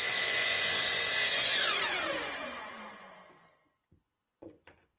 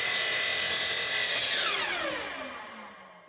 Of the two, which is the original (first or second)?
second